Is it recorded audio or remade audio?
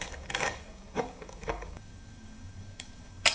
remade